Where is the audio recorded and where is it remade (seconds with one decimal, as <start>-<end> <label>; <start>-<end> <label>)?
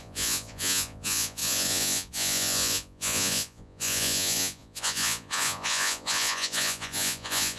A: 0.0-7.6 remade